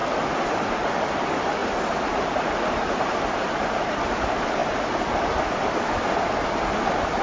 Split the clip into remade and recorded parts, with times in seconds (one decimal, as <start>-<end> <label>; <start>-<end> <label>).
0.0-4.6 recorded; 4.6-6.3 remade; 6.3-7.2 recorded